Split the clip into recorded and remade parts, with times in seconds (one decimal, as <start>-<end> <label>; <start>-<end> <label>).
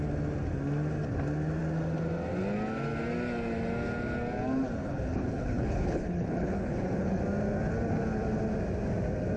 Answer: 0.0-4.8 recorded; 4.8-7.2 remade; 7.2-9.4 recorded